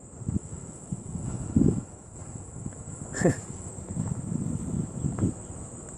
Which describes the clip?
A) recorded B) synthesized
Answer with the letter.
B